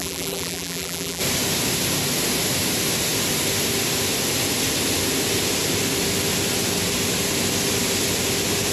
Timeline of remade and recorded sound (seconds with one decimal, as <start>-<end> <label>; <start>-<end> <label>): 0.0-1.2 remade; 1.2-8.7 recorded